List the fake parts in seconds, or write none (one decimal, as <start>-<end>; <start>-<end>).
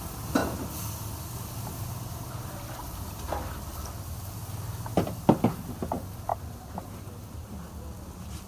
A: 6.3-7.7